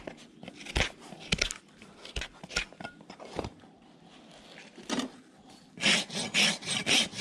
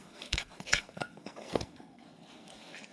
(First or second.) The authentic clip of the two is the first